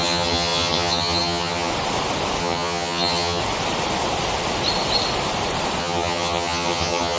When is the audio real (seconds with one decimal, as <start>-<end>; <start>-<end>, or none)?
1.7-2.4; 3.4-5.8